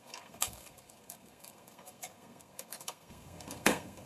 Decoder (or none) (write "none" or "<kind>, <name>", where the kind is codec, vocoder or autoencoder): codec, SNAC